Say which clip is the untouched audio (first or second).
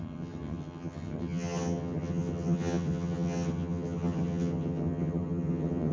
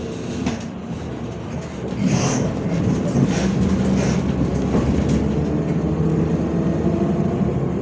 second